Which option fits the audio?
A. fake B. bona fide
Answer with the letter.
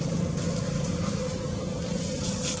B